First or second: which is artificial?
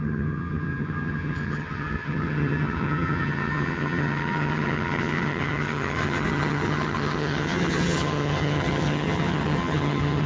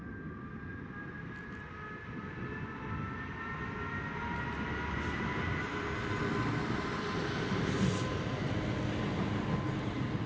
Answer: first